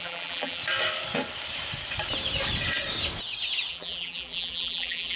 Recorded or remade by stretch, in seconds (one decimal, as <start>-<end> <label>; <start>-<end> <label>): 0.0-0.6 remade; 0.6-3.7 recorded; 3.7-5.2 remade